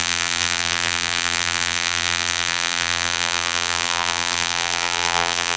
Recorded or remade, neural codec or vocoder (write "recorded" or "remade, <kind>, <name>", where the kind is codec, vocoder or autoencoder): remade, vocoder, BigVGAN v2